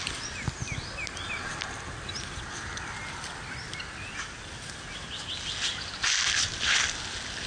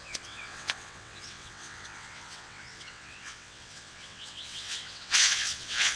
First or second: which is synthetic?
second